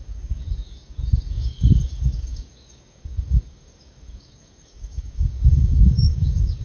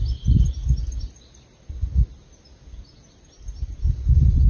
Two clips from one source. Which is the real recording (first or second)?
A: second